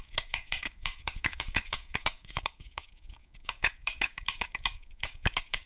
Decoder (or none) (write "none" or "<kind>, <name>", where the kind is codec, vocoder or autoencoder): codec, DAC